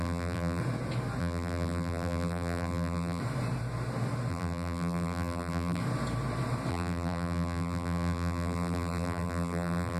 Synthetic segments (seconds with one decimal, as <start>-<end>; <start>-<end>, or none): 0.0-0.6; 1.2-3.2; 4.3-5.8; 6.7-10.0